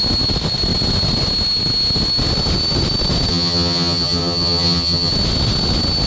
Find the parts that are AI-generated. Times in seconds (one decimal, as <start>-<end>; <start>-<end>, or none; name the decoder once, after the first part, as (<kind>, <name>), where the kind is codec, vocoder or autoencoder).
3.3-5.1 (vocoder, HiFi-GAN)